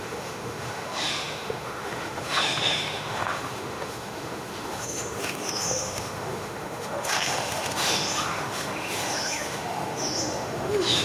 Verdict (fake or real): fake